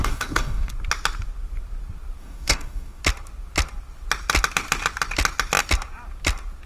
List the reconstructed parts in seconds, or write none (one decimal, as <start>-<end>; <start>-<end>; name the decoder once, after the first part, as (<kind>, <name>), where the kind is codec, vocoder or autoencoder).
0.0-0.7 (codec, DAC); 2.2-3.0